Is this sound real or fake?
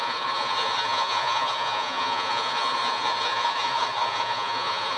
fake